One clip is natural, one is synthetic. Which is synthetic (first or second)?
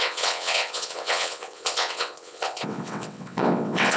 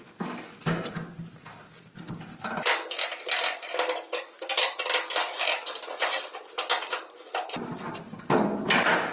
first